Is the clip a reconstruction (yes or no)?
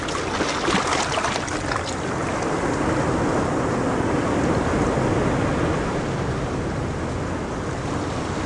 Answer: no